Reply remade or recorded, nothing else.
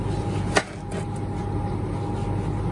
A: recorded